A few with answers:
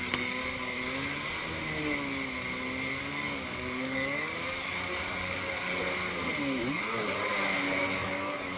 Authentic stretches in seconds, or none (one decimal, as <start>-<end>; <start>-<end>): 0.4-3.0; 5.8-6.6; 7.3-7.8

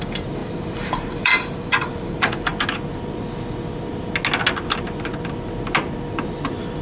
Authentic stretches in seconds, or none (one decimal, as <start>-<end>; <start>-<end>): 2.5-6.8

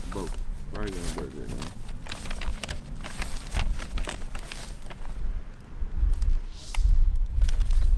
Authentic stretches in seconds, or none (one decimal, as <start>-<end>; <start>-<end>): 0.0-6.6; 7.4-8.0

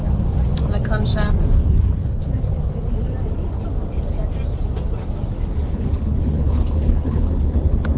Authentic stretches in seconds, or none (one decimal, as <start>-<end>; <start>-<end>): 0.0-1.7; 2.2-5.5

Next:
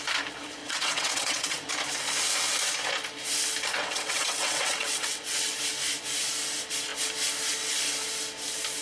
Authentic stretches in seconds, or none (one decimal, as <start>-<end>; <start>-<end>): 0.0-0.6; 1.7-3.8; 5.5-8.8

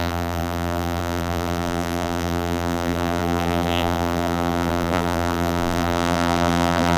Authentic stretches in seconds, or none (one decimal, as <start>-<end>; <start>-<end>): none